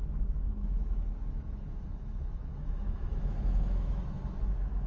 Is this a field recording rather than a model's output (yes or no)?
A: no